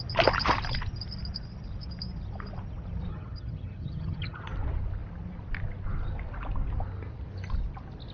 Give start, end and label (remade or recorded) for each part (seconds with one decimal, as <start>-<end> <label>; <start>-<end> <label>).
0.0-3.1 recorded; 3.1-4.5 remade; 4.5-8.1 recorded